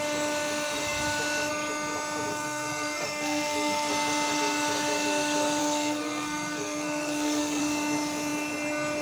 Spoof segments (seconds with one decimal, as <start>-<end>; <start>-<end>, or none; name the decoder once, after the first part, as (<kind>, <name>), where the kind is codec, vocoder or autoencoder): 2.3-3.9 (codec, SNAC); 5.6-7.6